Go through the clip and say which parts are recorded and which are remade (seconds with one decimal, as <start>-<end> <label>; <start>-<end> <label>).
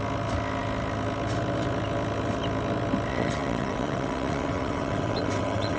0.0-3.1 recorded; 3.1-5.8 remade